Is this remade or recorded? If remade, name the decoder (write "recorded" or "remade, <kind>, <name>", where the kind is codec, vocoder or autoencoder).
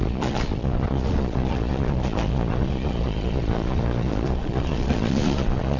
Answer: remade, vocoder, Vocos